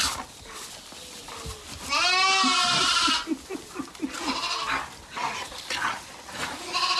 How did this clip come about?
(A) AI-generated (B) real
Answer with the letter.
B